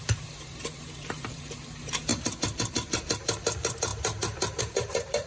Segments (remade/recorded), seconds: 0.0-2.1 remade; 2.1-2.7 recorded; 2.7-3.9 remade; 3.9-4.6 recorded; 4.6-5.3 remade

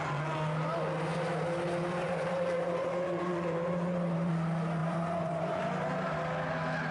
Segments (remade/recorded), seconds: 0.0-2.0 recorded; 2.0-4.3 remade; 4.3-4.8 recorded; 4.8-5.6 remade; 5.6-6.9 recorded